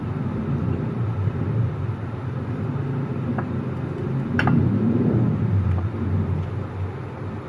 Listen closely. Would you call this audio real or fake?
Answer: fake